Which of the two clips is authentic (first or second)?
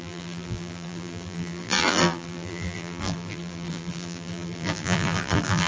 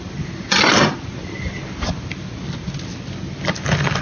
second